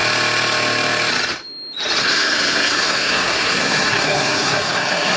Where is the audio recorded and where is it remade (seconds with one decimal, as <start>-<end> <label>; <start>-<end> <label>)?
0.0-2.0 recorded; 2.0-5.2 remade